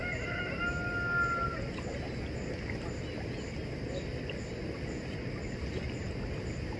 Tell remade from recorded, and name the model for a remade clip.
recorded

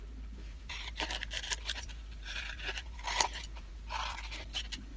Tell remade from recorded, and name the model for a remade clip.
remade, vocoder, BigVGAN v2